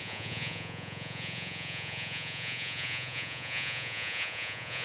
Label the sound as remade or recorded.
remade